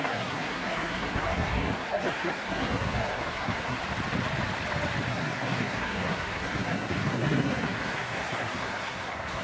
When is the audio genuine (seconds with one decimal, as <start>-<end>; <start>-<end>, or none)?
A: 3.8-5.1